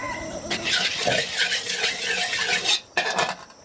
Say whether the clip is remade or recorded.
recorded